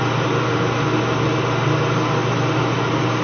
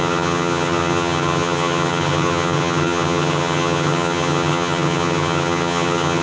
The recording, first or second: first